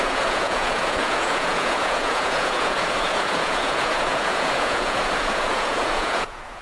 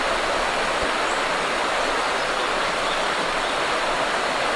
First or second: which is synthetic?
first